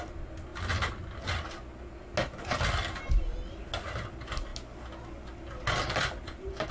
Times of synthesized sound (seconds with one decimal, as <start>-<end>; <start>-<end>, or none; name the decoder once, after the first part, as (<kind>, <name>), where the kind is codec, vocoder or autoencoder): none

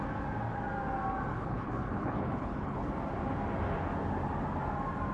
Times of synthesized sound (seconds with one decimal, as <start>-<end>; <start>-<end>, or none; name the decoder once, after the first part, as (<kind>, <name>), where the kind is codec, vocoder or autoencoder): 1.3-2.9 (codec, HILCodec)

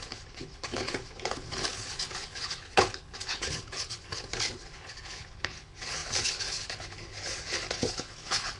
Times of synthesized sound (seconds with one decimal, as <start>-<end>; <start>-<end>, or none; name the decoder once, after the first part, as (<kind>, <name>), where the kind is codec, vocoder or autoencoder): 0.0-8.6 (codec, HILCodec)

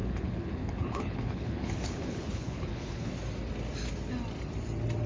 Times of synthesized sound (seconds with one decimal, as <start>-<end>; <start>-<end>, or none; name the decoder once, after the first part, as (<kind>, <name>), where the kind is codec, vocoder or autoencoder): 0.0-3.1 (codec, HILCodec)